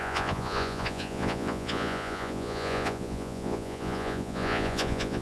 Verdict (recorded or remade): remade